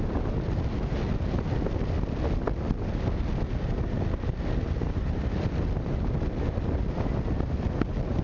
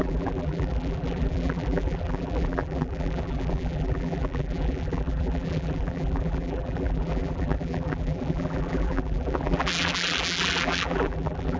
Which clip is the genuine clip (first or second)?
first